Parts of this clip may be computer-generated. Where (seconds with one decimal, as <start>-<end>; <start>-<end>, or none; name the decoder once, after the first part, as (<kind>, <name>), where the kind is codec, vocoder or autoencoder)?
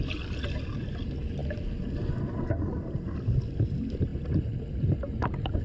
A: none